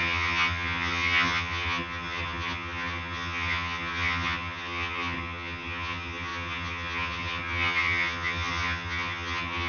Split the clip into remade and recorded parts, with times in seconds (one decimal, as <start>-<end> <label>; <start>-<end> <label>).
0.0-9.7 remade